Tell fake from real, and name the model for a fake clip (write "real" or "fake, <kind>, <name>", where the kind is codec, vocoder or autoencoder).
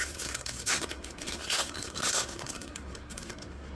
fake, codec, SNAC